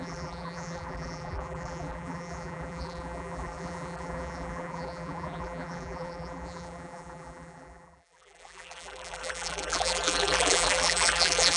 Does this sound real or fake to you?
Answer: fake